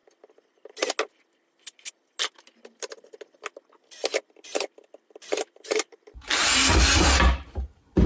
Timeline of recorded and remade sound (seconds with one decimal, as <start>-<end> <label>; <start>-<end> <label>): 0.0-8.1 recorded